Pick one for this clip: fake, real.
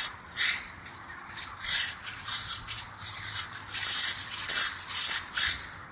real